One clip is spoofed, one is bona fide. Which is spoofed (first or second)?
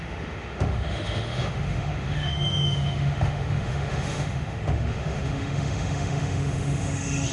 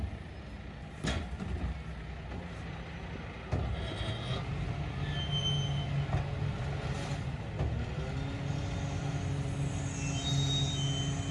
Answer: first